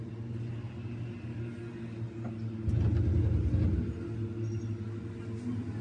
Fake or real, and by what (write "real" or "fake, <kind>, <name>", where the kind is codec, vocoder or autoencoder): real